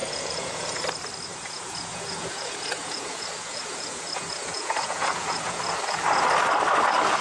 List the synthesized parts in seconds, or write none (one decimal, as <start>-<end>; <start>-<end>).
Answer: 0.0-0.8; 1.3-5.6